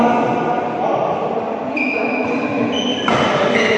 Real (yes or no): yes